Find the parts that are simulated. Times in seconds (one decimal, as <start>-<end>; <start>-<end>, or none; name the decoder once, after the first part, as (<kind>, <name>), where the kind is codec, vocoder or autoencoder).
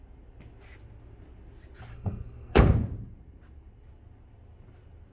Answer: 1.9-2.6 (codec, SNAC)